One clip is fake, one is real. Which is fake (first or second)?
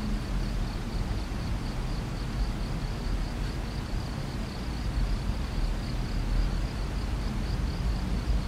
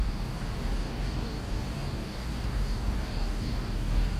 second